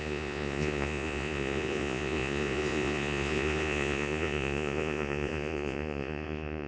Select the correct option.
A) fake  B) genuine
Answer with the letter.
A